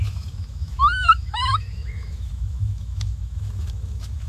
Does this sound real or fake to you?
fake